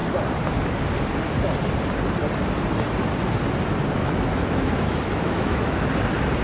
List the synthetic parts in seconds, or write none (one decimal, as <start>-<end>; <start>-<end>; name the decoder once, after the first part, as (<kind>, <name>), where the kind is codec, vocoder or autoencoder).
4.0-5.9 (autoencoder, DAC-VAE)